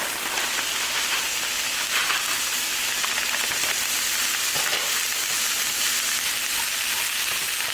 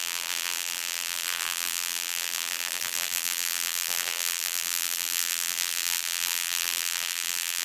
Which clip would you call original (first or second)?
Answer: first